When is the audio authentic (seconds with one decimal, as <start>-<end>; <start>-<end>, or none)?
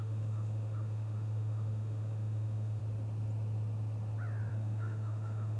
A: 2.8-4.5